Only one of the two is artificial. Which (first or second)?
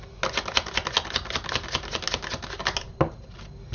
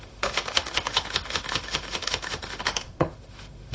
second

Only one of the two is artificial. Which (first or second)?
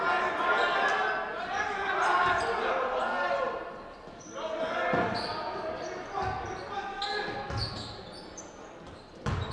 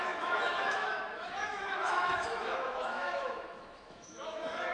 second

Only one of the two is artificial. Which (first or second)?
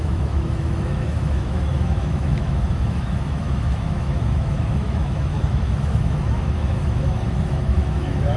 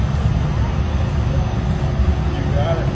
first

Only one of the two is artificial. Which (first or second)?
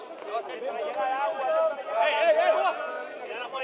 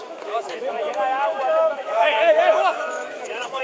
second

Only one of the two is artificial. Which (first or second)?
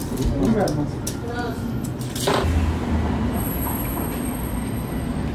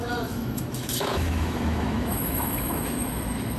second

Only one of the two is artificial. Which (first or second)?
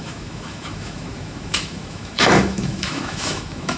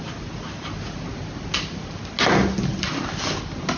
first